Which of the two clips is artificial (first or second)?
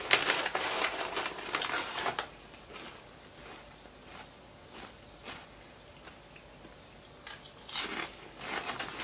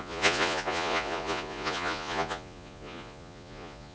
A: second